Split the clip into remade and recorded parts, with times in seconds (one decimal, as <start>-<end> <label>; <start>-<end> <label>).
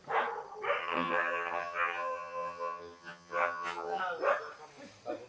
0.0-0.8 recorded; 0.8-4.0 remade; 4.0-5.3 recorded